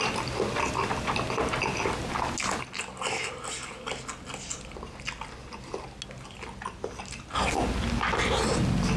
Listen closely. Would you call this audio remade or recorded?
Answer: recorded